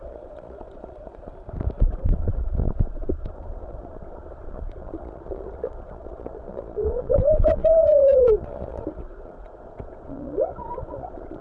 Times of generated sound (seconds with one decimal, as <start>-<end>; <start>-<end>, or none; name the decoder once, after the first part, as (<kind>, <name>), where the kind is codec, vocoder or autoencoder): 0.0-1.3 (vocoder, Vocos); 2.0-11.4